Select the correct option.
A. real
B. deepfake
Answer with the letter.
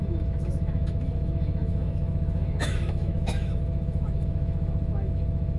B